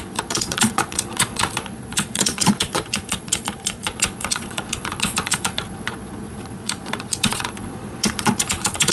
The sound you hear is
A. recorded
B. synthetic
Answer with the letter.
B